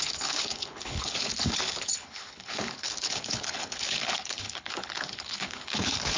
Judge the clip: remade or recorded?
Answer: remade